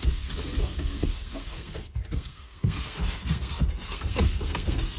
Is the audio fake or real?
fake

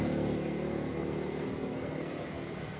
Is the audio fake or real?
fake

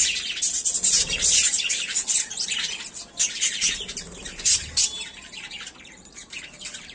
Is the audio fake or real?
fake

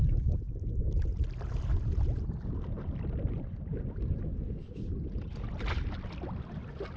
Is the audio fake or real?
real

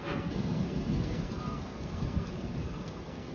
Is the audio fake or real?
fake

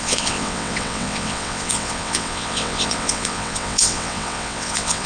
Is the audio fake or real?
fake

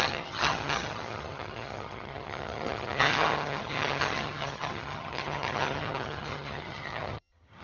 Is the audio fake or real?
fake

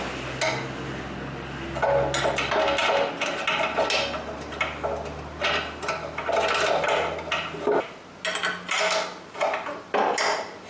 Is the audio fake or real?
real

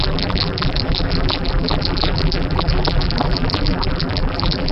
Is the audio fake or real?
fake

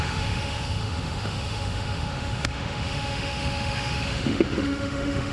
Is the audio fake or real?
fake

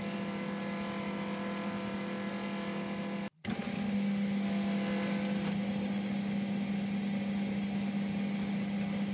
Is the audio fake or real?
real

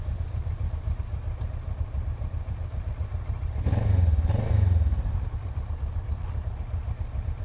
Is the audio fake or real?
real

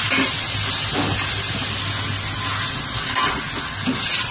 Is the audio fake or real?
real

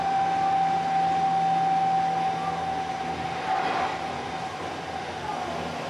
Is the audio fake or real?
real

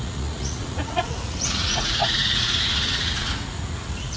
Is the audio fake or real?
fake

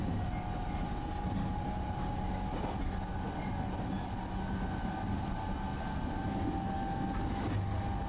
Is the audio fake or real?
real